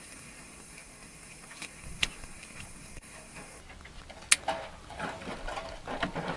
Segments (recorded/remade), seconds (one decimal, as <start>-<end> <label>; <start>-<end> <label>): 0.0-3.6 remade; 3.6-6.4 recorded